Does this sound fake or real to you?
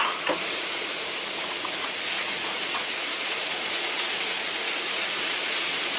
fake